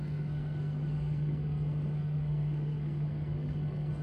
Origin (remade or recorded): remade